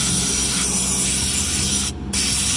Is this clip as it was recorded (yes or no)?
yes